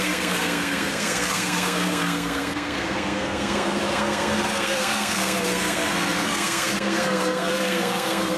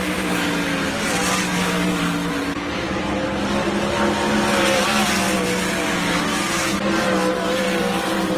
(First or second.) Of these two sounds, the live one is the second